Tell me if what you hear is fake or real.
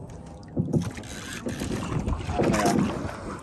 real